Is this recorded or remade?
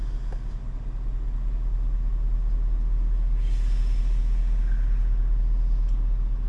recorded